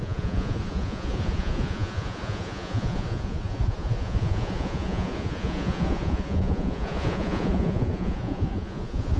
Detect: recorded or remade remade